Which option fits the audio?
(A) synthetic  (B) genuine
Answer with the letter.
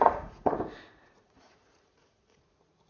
A